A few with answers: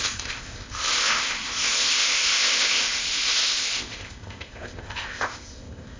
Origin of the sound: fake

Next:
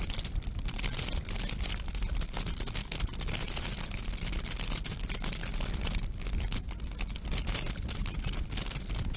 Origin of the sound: real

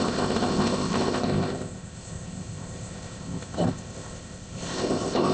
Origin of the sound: fake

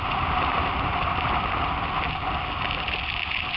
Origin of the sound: real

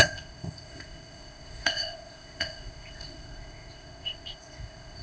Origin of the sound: fake